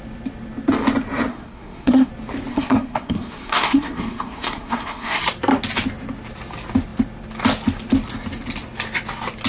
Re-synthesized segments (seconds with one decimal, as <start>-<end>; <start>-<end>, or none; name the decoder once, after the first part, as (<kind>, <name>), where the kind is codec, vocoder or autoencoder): 1.3-2.1 (codec, SNAC); 2.5-5.2